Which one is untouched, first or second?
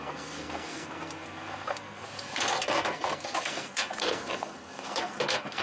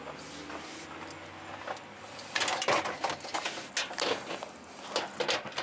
second